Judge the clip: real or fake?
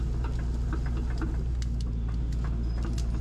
real